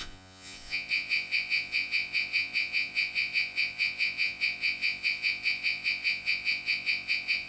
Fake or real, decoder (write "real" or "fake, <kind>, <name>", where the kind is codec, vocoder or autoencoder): fake, vocoder, Vocos